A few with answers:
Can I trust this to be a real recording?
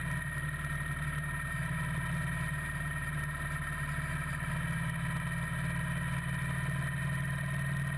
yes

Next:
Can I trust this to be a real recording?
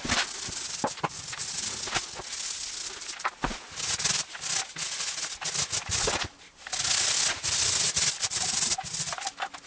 yes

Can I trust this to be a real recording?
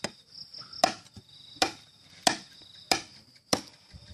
yes